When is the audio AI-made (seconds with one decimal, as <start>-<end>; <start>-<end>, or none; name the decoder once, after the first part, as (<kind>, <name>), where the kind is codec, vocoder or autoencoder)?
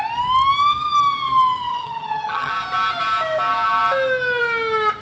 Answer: 1.7-2.5 (vocoder, HiFi-GAN)